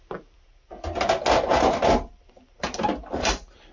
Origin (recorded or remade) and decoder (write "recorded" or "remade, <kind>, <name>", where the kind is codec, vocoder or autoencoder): recorded